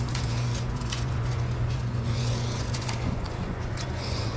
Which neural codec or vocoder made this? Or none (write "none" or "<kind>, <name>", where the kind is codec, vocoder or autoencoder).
vocoder, Vocos